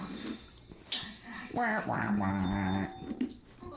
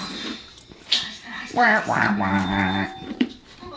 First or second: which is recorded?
first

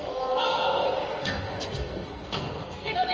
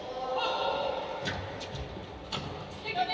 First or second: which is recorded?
second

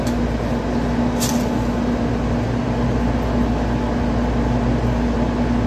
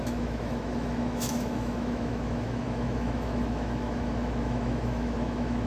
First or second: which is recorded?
first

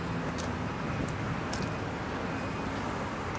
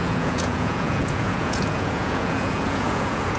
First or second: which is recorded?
first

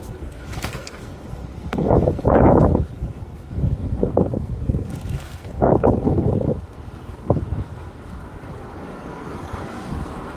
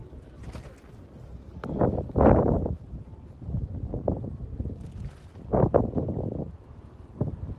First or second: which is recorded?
second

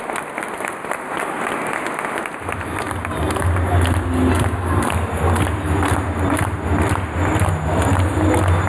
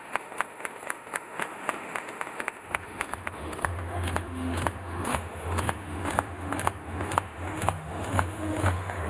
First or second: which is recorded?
first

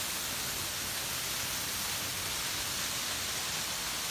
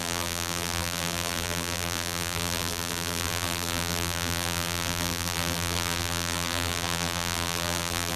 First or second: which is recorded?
first